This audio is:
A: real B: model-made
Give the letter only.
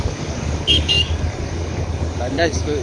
B